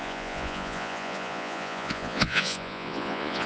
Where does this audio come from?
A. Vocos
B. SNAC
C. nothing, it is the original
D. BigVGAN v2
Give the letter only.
A